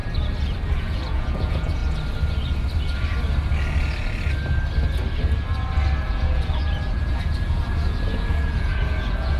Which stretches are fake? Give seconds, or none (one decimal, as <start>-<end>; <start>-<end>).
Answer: 0.8-1.8; 6.1-9.4